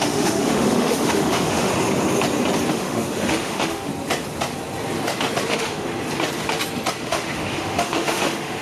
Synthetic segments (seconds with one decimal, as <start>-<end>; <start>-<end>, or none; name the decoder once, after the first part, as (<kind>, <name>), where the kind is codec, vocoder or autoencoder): 0.0-1.7 (autoencoder, DAC-VAE); 2.7-3.9; 5.5-5.9; 7.0-8.6